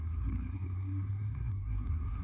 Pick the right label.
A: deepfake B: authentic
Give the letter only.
A